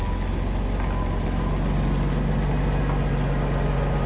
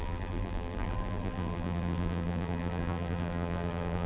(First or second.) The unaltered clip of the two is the first